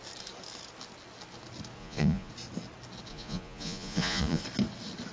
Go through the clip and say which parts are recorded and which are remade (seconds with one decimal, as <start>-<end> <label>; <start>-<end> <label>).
0.0-1.8 recorded; 1.8-2.3 remade; 2.3-3.1 recorded; 3.1-4.4 remade; 4.4-5.1 recorded